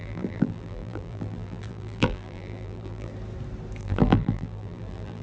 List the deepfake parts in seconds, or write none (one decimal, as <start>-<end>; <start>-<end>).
0.0-3.1; 3.8-5.2